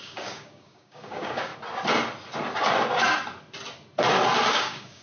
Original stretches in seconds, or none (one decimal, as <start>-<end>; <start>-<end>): 1.5-4.5